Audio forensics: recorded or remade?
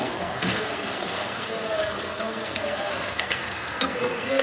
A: remade